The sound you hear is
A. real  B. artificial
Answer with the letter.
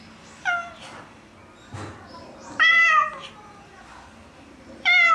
A